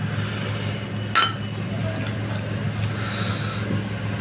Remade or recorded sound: recorded